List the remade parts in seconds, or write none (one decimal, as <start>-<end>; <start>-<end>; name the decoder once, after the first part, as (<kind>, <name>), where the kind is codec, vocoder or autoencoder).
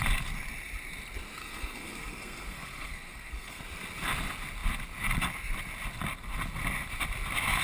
1.4-3.6 (codec, SNAC)